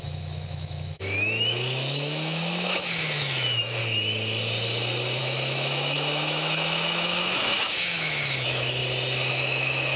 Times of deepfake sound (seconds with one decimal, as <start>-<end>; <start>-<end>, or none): 0.0-3.8; 5.2-8.8; 9.3-10.0